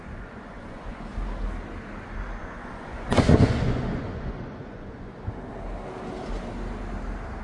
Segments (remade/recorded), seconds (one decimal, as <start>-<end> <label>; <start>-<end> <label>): 0.0-1.1 remade; 1.1-2.4 recorded; 2.4-5.1 remade; 5.1-7.4 recorded